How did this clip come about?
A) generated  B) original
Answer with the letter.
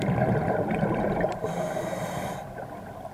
B